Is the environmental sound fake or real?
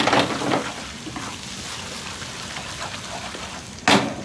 real